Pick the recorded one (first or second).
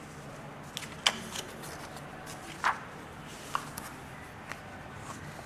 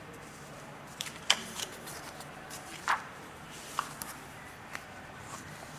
first